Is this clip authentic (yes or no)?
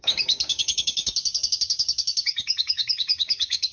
no